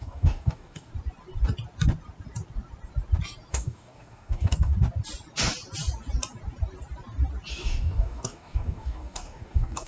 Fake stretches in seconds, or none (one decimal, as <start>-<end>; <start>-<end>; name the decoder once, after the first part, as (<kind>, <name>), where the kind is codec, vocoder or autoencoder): 0.0-0.9 (codec, DAC); 3.5-4.7; 7.5-9.9